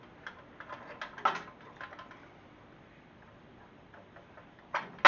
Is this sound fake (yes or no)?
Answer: no